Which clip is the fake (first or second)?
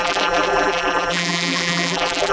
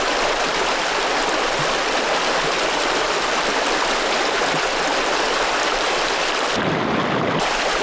first